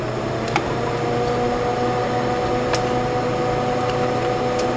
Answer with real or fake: real